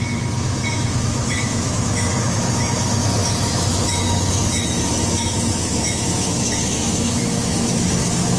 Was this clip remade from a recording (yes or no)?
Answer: yes